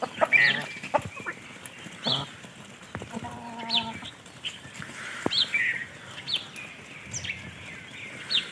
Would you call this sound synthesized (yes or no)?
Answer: no